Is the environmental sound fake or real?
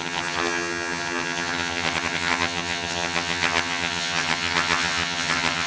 fake